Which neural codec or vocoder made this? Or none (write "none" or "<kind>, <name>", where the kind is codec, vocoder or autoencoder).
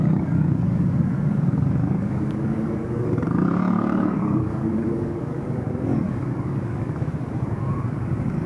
codec, DAC